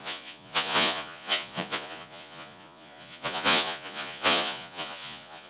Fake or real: fake